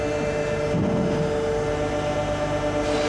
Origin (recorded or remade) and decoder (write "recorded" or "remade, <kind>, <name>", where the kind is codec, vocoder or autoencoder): recorded